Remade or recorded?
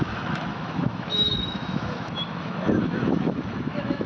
remade